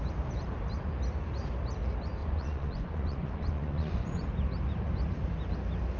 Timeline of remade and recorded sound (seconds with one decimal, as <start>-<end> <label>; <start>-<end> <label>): 0.0-2.2 recorded; 2.2-4.3 remade; 4.3-6.0 recorded